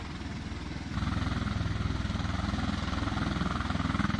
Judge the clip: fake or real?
real